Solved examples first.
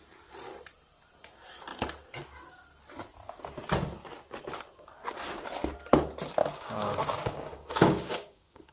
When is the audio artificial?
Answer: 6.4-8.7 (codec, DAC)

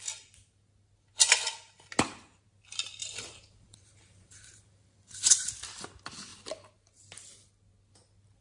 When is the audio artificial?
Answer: 3.0-5.3 (vocoder, BigVGAN v2)

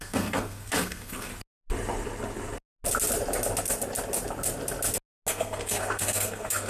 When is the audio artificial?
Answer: 0.0-1.3 (codec, SNAC); 5.3-6.7

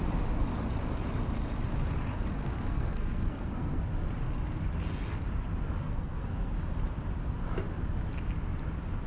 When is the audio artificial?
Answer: 2.4-3.8 (codec, SNAC); 5.8-6.5

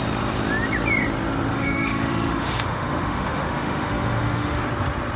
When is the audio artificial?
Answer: 1.5-4.6 (autoencoder, DAC-VAE)

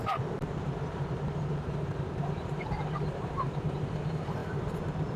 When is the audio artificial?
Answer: 0.0-5.2 (vocoder, BigVGAN v2)